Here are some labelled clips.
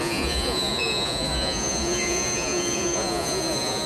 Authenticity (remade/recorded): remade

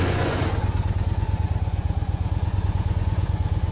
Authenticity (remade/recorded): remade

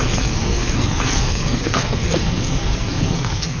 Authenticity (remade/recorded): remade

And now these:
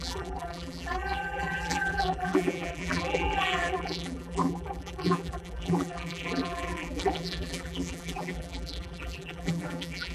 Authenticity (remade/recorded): remade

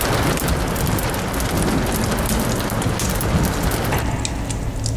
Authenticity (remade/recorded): recorded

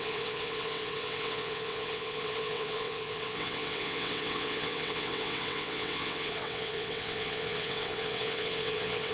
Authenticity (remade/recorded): remade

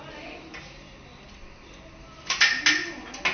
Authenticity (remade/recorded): recorded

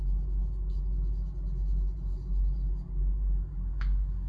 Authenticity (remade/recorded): recorded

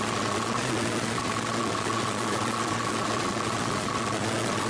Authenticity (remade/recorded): remade